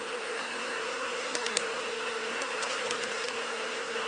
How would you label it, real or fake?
fake